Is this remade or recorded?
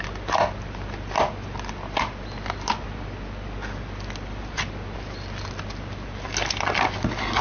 recorded